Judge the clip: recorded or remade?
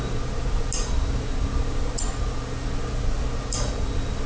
recorded